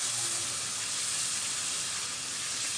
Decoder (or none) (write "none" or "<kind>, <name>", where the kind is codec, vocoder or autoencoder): none